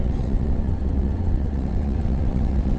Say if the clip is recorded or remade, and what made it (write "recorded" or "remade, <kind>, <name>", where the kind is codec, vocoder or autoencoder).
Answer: remade, vocoder, WaveNeXt